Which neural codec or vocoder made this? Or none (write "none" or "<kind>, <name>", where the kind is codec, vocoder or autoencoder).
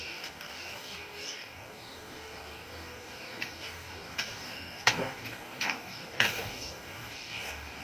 codec, DAC